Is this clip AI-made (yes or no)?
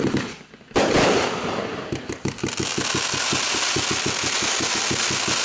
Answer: no